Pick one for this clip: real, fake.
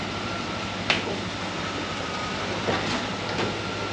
real